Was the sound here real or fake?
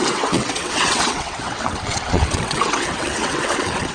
fake